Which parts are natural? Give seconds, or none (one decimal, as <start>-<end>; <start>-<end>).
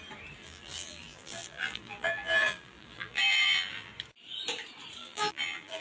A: 0.0-0.4; 3.9-5.0